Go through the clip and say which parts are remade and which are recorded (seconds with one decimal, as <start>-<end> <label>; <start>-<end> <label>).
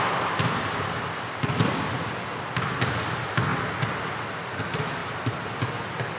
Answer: 0.0-6.2 recorded